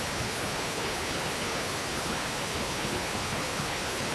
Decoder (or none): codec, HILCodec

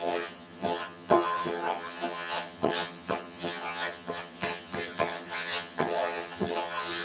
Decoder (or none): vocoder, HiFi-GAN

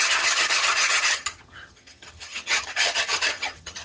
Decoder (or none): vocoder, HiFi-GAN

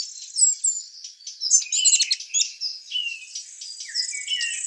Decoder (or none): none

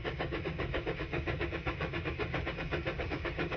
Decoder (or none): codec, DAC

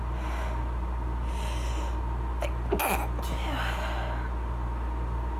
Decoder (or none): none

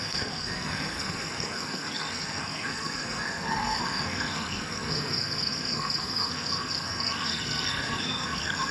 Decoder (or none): codec, SNAC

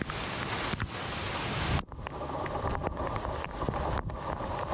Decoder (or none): none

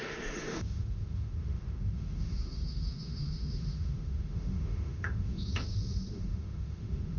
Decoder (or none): autoencoder, DAC-VAE